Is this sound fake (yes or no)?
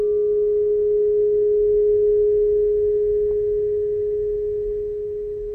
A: no